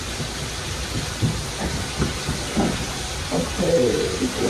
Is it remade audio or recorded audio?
recorded